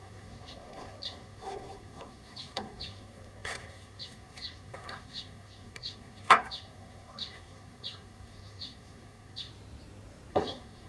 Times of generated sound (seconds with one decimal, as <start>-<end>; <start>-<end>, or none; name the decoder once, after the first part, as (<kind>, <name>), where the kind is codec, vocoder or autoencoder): 0.0-9.5 (codec, SNAC); 10.3-10.9